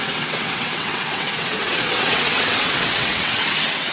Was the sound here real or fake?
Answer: fake